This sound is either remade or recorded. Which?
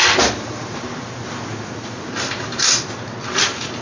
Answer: recorded